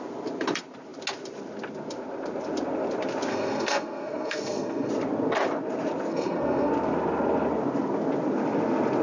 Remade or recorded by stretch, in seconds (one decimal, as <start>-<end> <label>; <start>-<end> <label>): 0.0-3.3 recorded; 3.3-4.9 remade; 4.9-6.1 recorded; 6.1-6.7 remade; 6.7-9.0 recorded